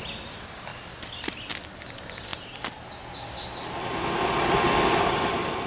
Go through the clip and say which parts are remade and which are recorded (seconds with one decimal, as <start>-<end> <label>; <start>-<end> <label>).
0.0-0.7 remade; 0.7-1.3 recorded; 1.3-2.3 remade; 2.3-5.3 recorded; 5.3-5.7 remade